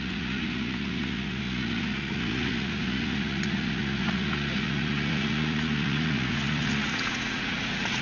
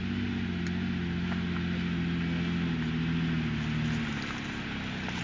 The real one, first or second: second